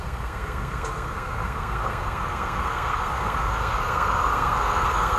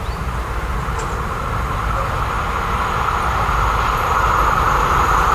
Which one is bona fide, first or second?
second